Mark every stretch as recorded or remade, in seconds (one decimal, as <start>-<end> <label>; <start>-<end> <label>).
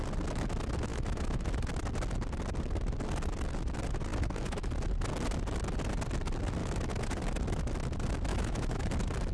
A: 0.0-0.9 recorded; 0.9-1.5 remade; 1.5-4.1 recorded; 4.1-4.7 remade; 4.7-6.6 recorded; 6.6-7.1 remade; 7.1-8.3 recorded; 8.3-8.9 remade; 8.9-9.3 recorded